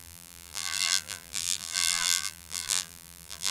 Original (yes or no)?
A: no